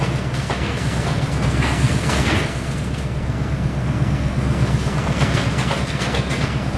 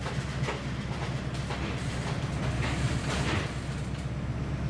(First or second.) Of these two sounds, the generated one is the first